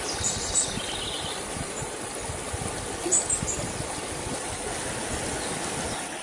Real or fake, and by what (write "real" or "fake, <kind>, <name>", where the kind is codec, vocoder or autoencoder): real